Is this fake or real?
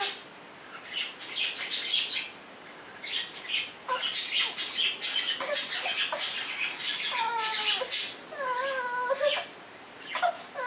real